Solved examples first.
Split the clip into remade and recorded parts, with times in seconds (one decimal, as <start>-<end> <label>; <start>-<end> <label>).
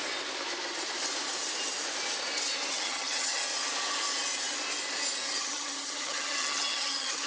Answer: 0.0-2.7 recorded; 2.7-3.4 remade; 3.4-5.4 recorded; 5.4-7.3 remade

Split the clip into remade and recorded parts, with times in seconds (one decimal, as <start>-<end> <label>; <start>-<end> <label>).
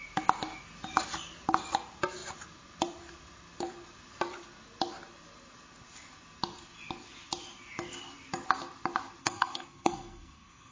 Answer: 0.0-9.2 recorded; 9.2-10.7 remade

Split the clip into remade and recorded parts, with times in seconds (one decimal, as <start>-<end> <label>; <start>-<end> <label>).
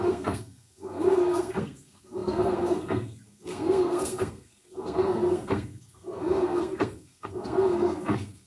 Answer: 0.0-8.5 remade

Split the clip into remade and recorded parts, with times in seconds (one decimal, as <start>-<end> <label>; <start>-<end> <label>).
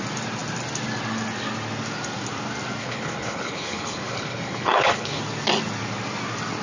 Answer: 0.0-2.8 recorded; 2.8-5.2 remade; 5.2-6.6 recorded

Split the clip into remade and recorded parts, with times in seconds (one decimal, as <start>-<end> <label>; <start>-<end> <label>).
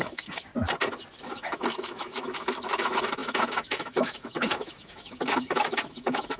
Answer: 0.0-0.5 remade; 0.5-1.2 recorded; 1.2-6.4 remade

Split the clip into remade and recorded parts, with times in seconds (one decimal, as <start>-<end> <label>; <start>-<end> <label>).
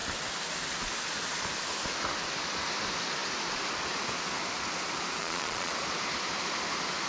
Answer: 0.0-5.2 recorded; 5.2-5.7 remade; 5.7-7.1 recorded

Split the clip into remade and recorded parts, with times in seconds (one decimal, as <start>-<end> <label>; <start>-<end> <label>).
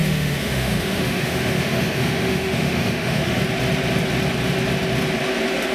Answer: 0.0-3.4 remade; 3.4-5.7 recorded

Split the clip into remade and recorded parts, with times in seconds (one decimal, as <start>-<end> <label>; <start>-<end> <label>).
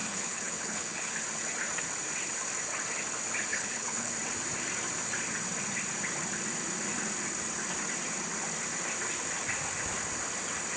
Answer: 0.0-1.1 remade; 1.1-3.5 recorded; 3.5-4.1 remade; 4.1-10.8 recorded